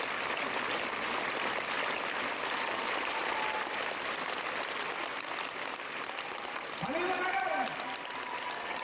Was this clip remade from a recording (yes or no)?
no